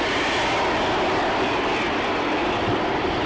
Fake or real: real